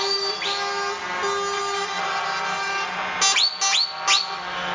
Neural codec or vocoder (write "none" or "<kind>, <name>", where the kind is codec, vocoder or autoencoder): none